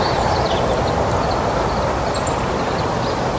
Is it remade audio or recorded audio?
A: recorded